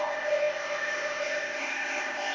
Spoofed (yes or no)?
yes